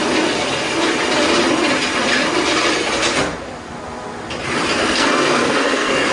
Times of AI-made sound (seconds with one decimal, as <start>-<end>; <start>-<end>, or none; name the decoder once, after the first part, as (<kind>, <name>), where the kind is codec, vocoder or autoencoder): 4.8-6.1 (codec, SNAC)